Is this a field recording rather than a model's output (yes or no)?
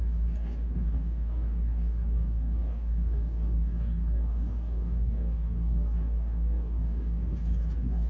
no